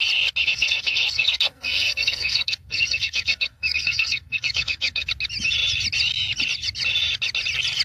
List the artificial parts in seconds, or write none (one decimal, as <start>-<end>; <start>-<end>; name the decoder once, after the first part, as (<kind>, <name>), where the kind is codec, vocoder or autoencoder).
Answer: 0.4-5.1 (codec, SNAC)